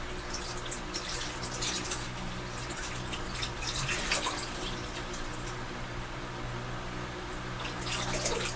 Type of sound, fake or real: real